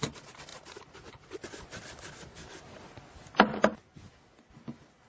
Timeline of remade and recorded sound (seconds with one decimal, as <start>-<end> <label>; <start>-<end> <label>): 0.0-5.1 recorded

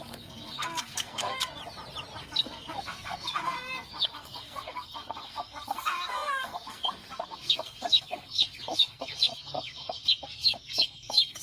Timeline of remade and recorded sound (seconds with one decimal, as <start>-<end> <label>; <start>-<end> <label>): 0.0-1.6 remade; 1.6-2.2 recorded; 2.2-11.4 remade

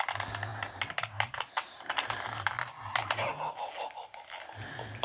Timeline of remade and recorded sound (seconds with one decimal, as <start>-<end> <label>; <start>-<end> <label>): 0.0-5.0 recorded

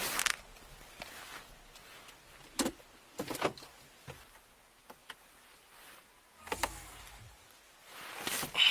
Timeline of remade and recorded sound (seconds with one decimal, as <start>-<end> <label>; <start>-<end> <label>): 0.0-8.7 recorded

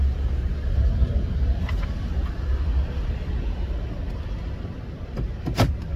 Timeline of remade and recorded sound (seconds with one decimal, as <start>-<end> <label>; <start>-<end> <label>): 0.0-6.0 recorded

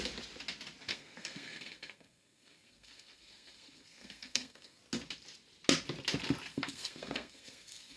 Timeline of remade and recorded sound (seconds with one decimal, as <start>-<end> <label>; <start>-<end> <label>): 0.0-0.9 recorded; 0.9-4.8 remade; 4.8-6.5 recorded; 6.5-8.0 remade